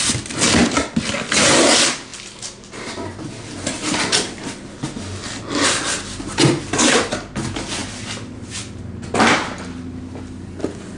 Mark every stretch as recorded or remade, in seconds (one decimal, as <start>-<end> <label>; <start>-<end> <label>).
0.0-11.0 recorded

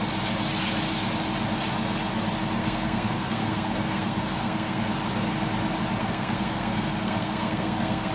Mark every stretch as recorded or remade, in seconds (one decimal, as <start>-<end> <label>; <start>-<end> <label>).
0.0-2.6 recorded; 2.6-4.8 remade; 4.8-6.0 recorded; 6.0-8.1 remade